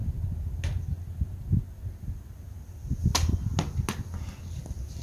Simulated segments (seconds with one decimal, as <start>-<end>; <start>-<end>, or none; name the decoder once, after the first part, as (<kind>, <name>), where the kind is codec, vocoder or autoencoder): none